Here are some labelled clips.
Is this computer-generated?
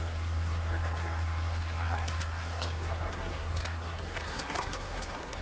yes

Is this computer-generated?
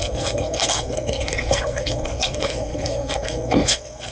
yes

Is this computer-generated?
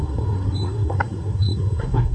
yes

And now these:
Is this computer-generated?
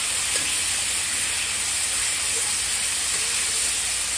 no